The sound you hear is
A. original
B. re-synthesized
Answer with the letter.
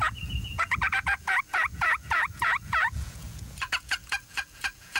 B